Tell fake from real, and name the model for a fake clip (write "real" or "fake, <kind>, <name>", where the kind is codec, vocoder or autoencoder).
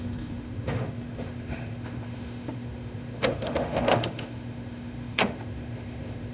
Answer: fake, autoencoder, DAC-VAE